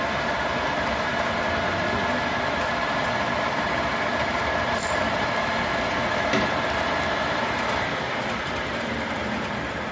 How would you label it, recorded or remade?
remade